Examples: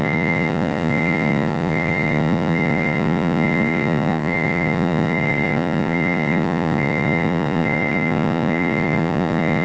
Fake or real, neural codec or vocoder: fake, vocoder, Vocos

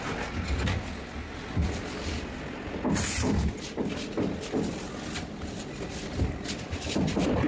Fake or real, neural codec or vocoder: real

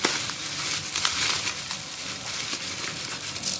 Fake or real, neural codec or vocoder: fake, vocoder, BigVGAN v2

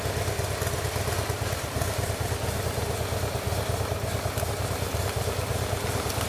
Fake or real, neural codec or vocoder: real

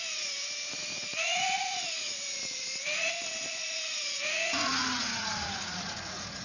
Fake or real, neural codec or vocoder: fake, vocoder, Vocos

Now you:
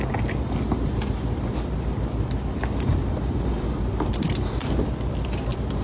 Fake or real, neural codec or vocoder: real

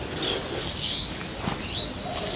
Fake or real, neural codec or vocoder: real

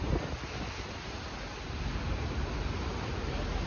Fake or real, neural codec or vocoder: real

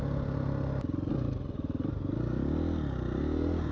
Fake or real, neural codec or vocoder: real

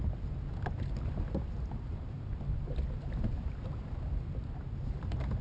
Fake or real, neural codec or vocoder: real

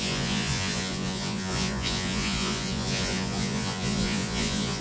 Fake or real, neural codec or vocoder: fake, vocoder, Vocos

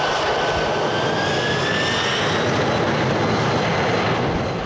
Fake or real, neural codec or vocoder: real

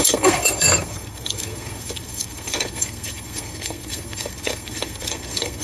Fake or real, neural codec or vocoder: fake, codec, SNAC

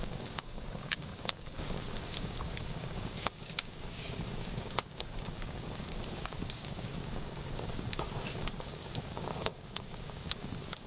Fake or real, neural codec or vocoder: fake, codec, DAC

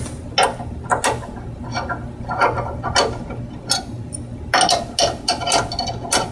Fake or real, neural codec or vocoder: real